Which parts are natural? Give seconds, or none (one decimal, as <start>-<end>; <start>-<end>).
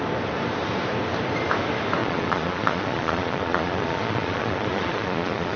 0.0-2.0